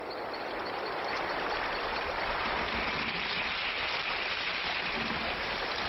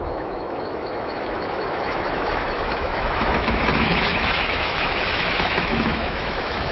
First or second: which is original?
first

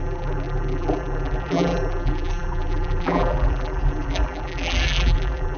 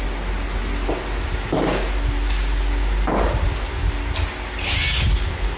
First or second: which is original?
second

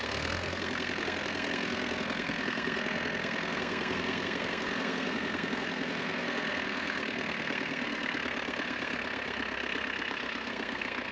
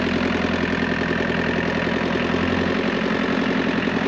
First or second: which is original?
second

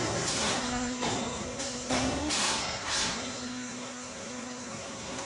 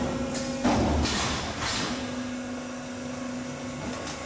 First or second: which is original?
second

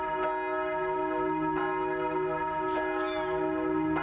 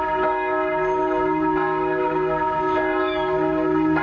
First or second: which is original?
first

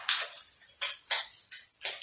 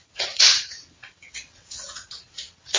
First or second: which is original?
first